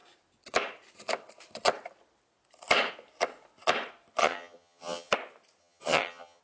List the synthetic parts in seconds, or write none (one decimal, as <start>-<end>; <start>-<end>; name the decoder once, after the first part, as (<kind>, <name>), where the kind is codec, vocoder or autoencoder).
4.2-5.1 (vocoder, HiFi-GAN); 5.6-6.4